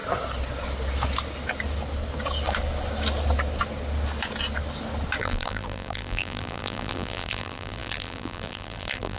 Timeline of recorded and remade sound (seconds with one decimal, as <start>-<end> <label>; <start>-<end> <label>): 0.0-5.2 recorded; 5.2-9.2 remade